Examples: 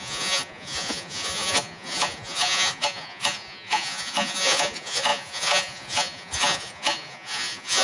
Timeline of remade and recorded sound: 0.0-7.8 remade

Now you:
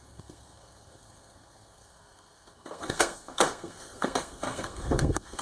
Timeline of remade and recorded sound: 0.0-5.4 remade